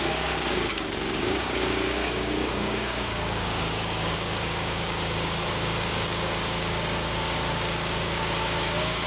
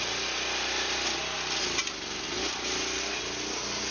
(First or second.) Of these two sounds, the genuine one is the second